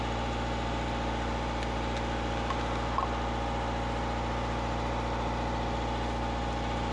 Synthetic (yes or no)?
no